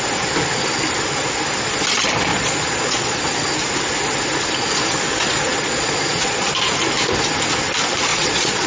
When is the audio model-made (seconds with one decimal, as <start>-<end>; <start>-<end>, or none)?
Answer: 2.3-3.2; 5.5-6.5; 8.1-8.7